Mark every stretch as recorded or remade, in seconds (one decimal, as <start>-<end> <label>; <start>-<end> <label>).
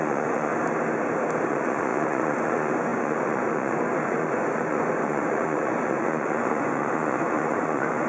0.0-0.5 remade; 0.5-1.5 recorded; 1.5-8.1 remade